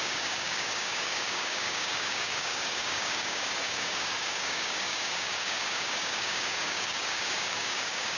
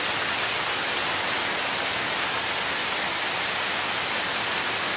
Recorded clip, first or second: second